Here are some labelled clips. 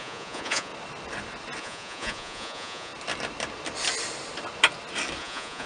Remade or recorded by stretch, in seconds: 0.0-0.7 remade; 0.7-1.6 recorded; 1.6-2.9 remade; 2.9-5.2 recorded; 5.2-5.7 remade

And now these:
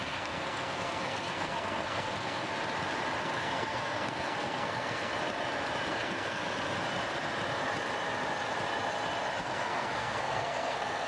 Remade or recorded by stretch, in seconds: 0.0-2.5 remade; 2.5-3.2 recorded; 3.2-5.1 remade; 5.1-5.9 recorded; 5.9-6.4 remade; 6.4-9.4 recorded; 9.4-11.1 remade

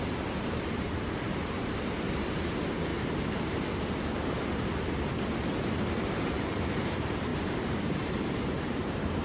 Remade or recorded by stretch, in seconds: 0.0-2.9 remade; 2.9-5.5 recorded; 5.5-9.2 remade

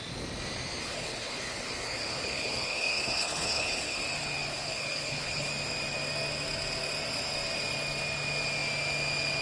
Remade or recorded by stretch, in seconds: 0.0-0.8 recorded; 0.8-4.0 remade; 4.0-4.5 recorded; 4.5-5.5 remade; 5.5-9.4 recorded

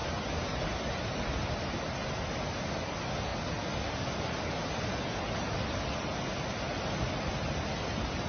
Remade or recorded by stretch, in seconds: 0.0-6.1 recorded; 6.1-7.3 remade; 7.3-8.3 recorded

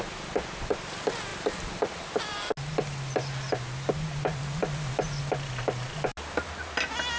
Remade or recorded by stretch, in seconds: 0.0-7.2 recorded